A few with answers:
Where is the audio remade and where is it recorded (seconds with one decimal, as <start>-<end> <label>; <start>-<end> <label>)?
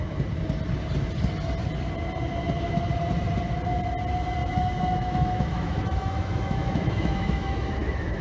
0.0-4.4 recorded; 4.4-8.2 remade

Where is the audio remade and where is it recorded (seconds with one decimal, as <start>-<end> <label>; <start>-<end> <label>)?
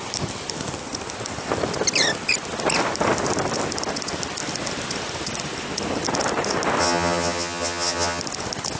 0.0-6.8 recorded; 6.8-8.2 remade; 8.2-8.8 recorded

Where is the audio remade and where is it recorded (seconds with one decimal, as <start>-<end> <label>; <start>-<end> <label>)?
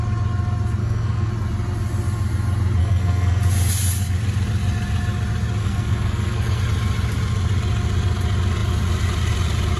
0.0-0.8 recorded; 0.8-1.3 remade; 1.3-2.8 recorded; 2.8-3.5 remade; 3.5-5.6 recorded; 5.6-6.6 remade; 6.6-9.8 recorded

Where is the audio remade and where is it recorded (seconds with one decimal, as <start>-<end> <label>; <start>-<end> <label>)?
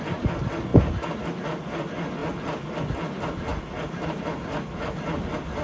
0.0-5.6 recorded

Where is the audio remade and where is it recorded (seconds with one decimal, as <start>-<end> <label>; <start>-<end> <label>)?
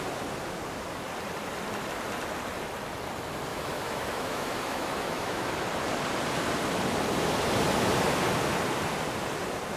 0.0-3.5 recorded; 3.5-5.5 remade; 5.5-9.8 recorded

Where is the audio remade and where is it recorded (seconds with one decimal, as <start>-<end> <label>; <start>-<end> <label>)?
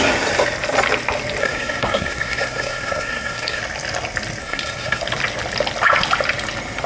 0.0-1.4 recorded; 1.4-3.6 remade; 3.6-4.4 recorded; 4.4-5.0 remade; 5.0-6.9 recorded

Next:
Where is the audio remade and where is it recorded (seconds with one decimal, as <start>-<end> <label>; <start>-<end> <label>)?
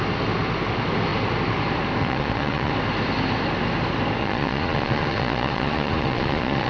0.0-2.0 recorded; 2.0-2.7 remade; 2.7-4.2 recorded; 4.2-6.7 remade